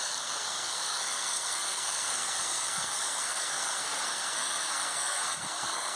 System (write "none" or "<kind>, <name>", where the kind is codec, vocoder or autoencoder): codec, SNAC